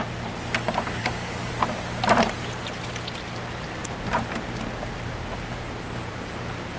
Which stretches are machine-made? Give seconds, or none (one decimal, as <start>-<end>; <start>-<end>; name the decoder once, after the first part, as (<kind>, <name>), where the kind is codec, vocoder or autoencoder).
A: 1.0-1.5 (codec, DAC)